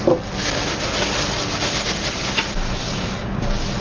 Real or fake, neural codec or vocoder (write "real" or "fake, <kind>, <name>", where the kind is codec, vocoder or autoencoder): real